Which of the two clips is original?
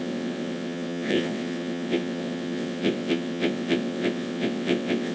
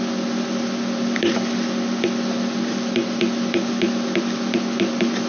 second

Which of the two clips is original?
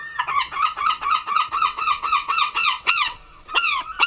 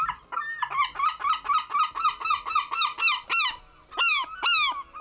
second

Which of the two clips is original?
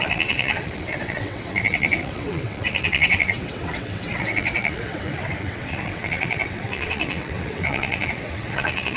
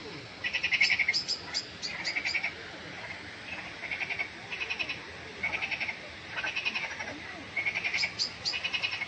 second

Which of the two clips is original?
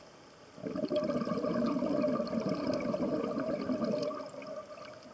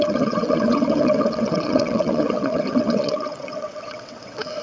first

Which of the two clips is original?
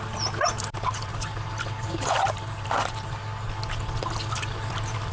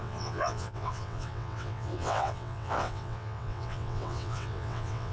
first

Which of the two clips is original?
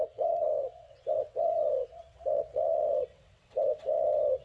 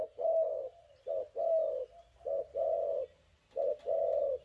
second